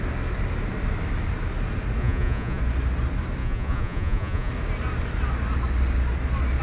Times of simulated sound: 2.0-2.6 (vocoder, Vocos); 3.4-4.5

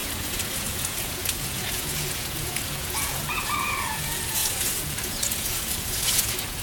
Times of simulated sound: 0.0-6.6 (vocoder, Vocos)

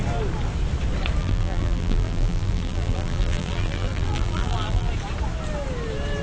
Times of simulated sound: 1.2-4.9 (vocoder, BigVGAN v2)

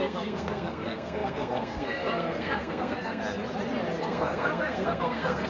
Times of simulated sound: 0.0-3.2 (codec, SNAC); 4.0-5.5

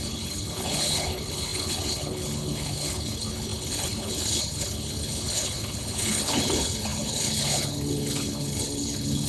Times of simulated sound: 0.0-9.3 (codec, HILCodec)

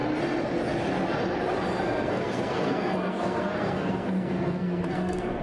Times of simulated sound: 1.8-5.4 (codec, SNAC)